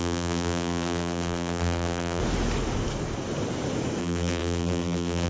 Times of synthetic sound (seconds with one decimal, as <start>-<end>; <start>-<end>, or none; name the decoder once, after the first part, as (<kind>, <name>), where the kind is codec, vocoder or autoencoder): 0.0-2.2 (vocoder, BigVGAN v2); 4.0-5.3